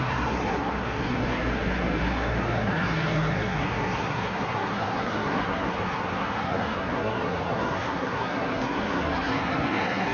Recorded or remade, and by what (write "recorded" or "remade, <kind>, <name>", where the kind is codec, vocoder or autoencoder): remade, codec, SNAC